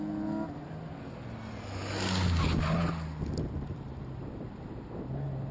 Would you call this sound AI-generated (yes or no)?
no